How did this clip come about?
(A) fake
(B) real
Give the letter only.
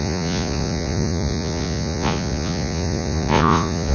A